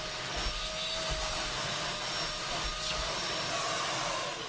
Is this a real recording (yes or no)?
yes